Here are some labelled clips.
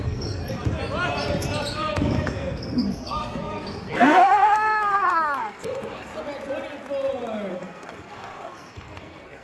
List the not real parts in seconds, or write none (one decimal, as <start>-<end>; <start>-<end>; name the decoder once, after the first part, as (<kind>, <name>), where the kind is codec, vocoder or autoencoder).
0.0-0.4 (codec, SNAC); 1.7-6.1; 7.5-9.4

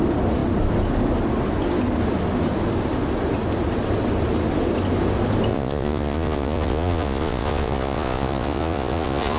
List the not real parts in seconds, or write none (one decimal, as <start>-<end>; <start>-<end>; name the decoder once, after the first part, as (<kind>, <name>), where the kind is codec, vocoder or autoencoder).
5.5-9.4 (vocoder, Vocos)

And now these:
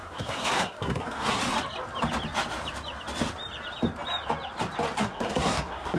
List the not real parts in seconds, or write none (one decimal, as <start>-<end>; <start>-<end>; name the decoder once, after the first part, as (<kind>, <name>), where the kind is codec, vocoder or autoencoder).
0.0-1.4 (codec, SNAC); 5.0-6.0

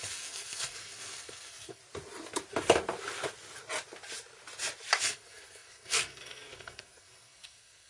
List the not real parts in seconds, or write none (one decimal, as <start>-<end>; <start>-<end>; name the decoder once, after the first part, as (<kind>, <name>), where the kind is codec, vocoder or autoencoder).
0.0-1.8 (codec, SNAC); 5.0-7.9